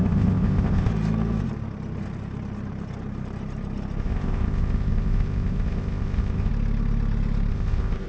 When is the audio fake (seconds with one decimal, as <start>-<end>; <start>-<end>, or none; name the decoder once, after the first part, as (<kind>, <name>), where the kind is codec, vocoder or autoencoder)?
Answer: 0.0-0.9 (codec, ZipCodec); 4.0-6.5; 7.5-8.1